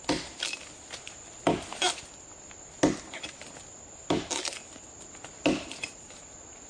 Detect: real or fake real